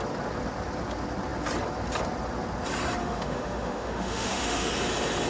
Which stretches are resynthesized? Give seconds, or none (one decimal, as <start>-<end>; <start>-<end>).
3.0-4.7